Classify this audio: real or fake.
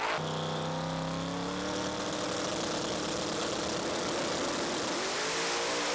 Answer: real